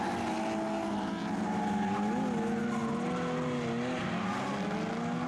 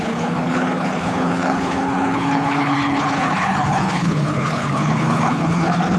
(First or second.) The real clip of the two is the first